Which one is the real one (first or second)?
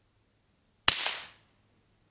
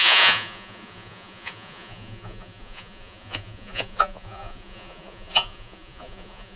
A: first